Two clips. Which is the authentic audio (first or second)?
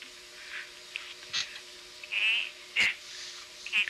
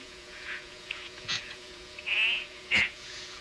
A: first